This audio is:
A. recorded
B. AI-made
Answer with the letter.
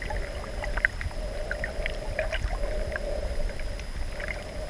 B